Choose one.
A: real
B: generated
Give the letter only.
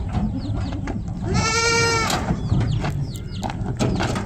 A